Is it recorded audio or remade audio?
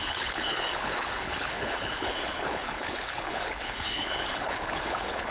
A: remade